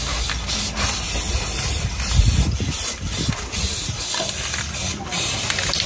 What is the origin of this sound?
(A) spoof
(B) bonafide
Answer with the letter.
B